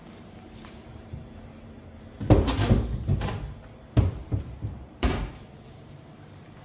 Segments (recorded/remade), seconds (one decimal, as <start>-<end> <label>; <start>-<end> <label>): 0.0-2.0 remade; 2.0-4.2 recorded; 4.2-6.6 remade